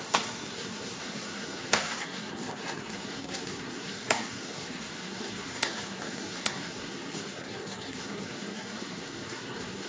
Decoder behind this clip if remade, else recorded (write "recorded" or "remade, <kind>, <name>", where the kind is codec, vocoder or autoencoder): remade, codec, SNAC